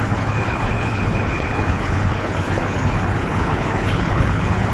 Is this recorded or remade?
remade